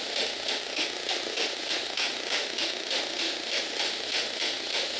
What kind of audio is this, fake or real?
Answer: fake